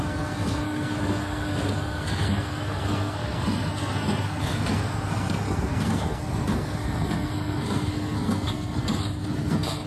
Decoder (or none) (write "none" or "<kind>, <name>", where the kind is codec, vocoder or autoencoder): codec, SNAC